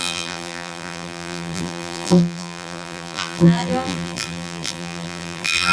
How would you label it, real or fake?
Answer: fake